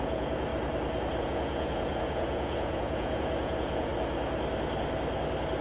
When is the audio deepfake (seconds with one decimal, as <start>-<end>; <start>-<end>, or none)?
0.0-0.5; 1.2-3.9

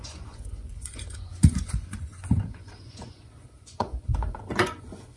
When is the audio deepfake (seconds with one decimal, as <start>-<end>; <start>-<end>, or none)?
0.0-5.2

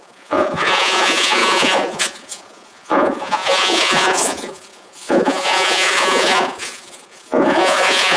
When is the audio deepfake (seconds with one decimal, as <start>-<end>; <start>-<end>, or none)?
0.0-8.2

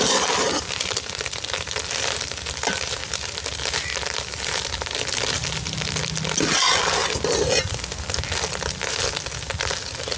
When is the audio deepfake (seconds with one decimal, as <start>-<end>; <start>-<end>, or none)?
none

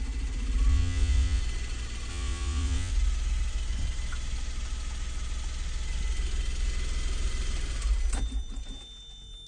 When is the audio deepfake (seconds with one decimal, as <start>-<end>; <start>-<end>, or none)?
0.7-1.4; 2.1-2.9

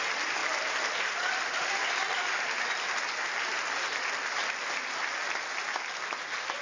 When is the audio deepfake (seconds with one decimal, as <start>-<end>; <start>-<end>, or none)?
none

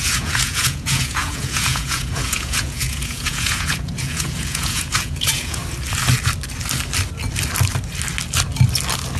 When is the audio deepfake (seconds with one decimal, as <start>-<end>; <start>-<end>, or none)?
0.0-5.6

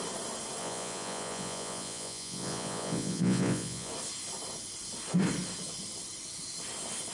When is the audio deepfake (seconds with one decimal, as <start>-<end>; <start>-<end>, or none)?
0.6-3.9